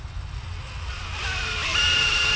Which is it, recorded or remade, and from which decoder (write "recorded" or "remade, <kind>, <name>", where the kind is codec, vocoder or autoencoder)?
recorded